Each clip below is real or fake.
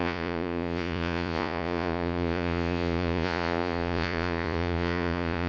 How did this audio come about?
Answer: fake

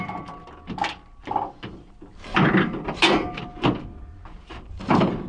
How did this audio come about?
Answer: real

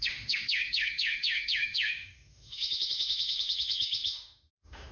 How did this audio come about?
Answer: fake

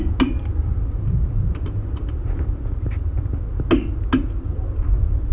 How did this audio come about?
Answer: real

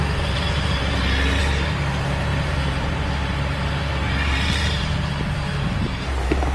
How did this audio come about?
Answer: fake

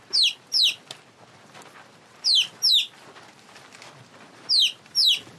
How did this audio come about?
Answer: real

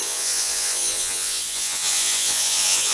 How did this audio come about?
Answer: fake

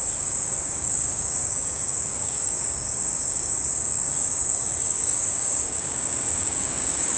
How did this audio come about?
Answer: fake